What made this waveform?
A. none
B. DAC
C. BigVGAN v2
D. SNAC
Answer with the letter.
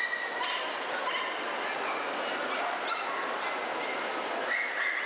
A